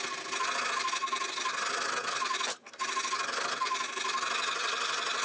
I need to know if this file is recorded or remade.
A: recorded